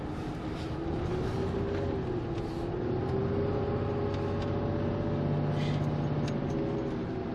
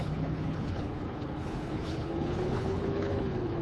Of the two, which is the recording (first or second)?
first